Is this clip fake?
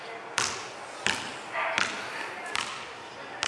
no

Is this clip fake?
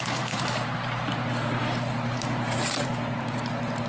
yes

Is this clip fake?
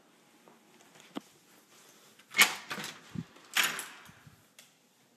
no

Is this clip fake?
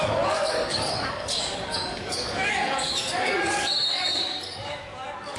yes